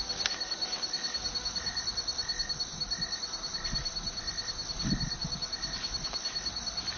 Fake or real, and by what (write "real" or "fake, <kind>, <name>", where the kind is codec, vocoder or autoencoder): real